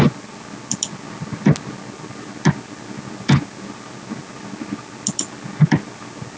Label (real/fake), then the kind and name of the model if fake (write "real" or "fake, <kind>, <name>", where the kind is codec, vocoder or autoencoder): real